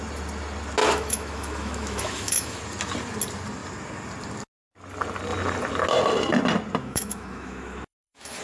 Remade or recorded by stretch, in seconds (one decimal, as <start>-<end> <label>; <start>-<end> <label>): 0.0-0.8 recorded; 0.8-2.6 remade; 2.6-6.8 recorded; 6.8-8.4 remade